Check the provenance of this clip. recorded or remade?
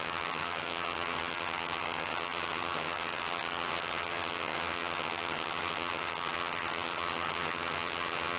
remade